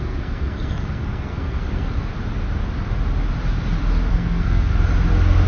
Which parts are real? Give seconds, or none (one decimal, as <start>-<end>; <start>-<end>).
2.1-4.1; 4.7-5.5